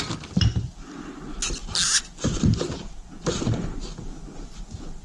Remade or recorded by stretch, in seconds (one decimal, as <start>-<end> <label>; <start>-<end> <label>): 0.0-5.0 recorded